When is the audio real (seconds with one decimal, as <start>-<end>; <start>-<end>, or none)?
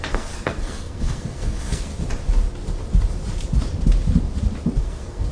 1.9-4.8